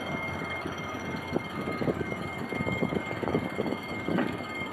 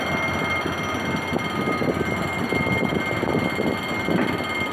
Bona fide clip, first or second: second